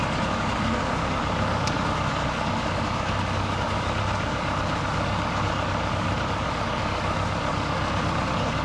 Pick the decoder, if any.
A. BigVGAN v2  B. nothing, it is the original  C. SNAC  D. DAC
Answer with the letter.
D